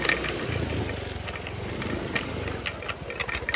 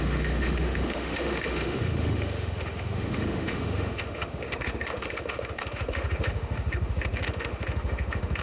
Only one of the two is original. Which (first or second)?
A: first